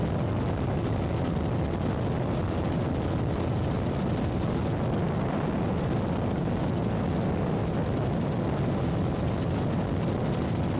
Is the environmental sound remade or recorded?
recorded